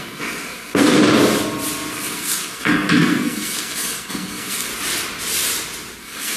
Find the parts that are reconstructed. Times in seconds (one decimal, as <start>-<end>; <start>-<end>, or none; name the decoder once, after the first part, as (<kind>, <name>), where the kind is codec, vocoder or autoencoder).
0.0-1.0 (codec, SNAC); 1.9-4.7; 6.0-6.4